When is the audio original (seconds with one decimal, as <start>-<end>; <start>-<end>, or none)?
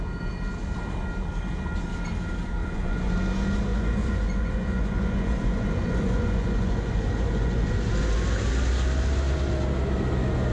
0.0-2.6; 3.1-3.7; 7.9-10.5